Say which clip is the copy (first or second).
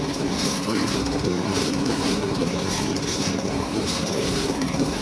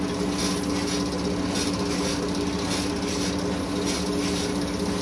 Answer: first